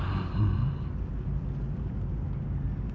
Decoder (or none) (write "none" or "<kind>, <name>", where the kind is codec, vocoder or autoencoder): none